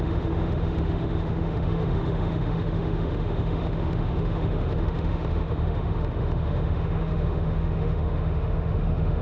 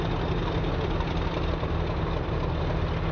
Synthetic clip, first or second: first